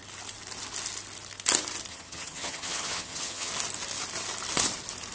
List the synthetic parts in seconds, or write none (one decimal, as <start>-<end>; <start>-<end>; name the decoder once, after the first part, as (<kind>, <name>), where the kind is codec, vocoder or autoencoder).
1.9-3.5 (vocoder, HiFi-GAN)